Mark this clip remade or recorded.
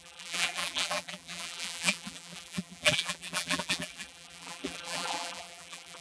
remade